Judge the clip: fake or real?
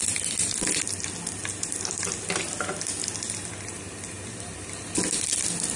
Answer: real